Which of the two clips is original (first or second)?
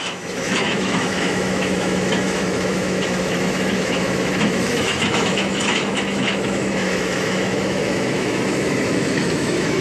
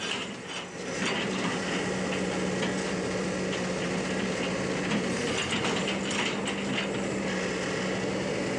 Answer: second